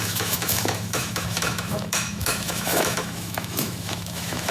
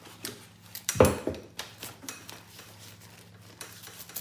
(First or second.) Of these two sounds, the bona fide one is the second